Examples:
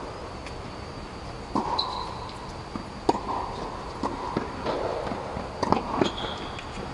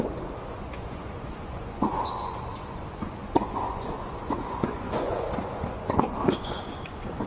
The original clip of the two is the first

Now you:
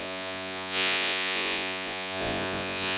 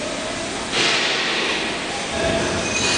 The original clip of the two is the second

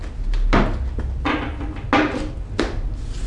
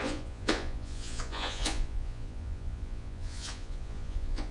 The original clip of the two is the first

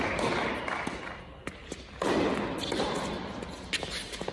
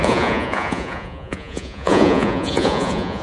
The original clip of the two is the first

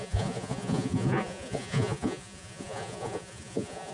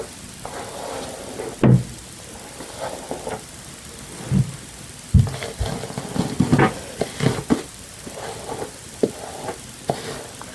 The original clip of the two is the second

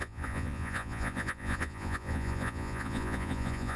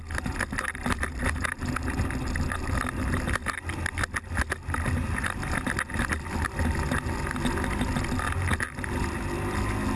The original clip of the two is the second